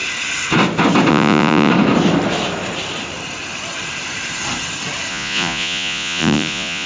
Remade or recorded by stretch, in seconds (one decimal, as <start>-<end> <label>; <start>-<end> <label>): 0.0-1.1 recorded; 1.1-1.7 remade; 1.7-5.1 recorded; 5.1-6.9 remade